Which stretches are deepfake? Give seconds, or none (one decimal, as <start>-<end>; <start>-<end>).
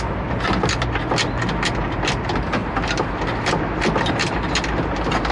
none